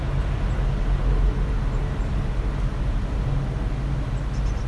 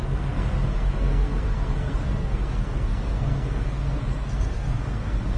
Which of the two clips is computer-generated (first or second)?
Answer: second